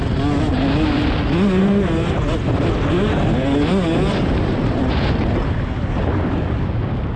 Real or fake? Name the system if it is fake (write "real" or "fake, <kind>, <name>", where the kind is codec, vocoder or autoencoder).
real